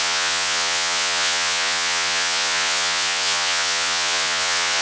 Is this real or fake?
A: fake